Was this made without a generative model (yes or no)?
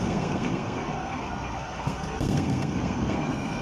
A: no